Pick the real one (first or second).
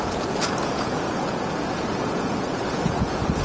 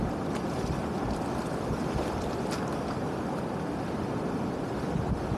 second